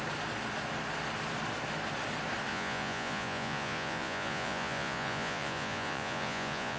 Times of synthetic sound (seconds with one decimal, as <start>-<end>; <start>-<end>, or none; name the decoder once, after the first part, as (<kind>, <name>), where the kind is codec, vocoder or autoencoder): 2.5-6.8 (vocoder, Vocos)